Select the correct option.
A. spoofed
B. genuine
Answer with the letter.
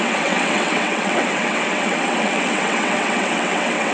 A